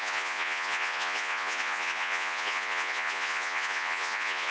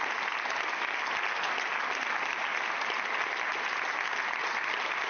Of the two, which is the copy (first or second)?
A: first